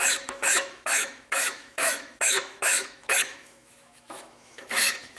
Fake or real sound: fake